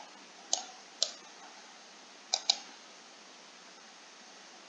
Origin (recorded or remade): recorded